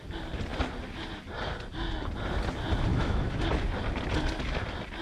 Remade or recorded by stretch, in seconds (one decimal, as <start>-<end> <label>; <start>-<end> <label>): 0.0-2.9 recorded; 2.9-3.4 remade; 3.4-5.0 recorded